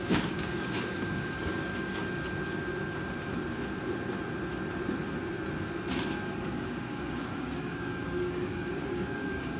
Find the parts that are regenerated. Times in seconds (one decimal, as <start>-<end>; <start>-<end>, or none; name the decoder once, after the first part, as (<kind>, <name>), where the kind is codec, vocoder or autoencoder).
0.0-1.7 (codec, DAC); 6.4-9.6